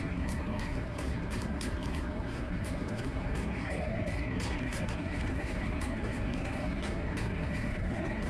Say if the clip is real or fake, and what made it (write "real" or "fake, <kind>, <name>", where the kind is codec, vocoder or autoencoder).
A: fake, codec, SNAC